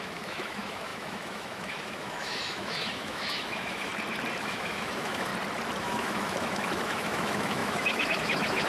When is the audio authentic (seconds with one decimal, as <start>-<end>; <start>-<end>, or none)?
3.9-4.4; 5.3-5.8